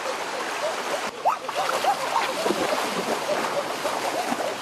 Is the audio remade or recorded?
recorded